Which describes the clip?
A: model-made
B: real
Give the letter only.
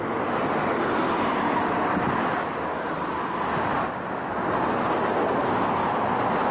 B